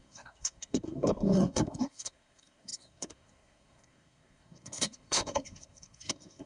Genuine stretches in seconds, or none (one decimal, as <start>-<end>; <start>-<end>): none